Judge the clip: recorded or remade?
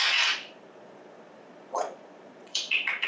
remade